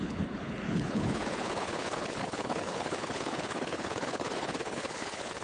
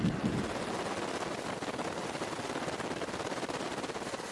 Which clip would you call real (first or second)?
second